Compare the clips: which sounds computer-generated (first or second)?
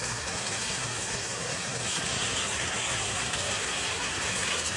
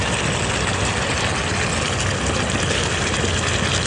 first